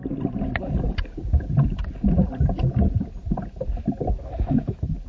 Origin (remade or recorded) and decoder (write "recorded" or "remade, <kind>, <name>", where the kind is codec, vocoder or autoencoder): recorded